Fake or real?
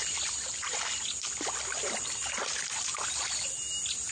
real